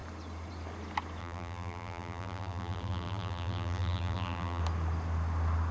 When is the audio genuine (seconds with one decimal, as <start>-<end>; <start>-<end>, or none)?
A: 0.0-1.2; 4.6-5.7